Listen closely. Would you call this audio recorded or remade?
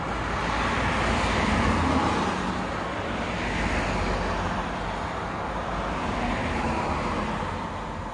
recorded